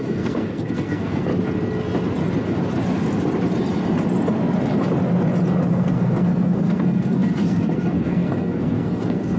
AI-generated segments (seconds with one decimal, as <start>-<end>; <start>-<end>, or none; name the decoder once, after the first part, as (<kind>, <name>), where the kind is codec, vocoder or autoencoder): 0.0-1.3 (codec, SNAC); 5.7-9.4